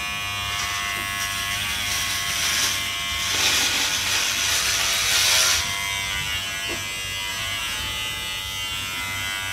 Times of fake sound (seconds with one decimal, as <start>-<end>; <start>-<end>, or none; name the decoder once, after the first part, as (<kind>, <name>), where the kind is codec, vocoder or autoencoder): 7.3-8.4 (vocoder, Vocos)